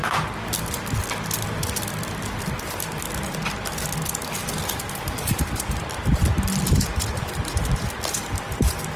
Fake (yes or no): no